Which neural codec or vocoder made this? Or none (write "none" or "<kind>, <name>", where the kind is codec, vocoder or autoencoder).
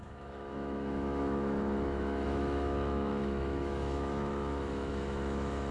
autoencoder, DAC-VAE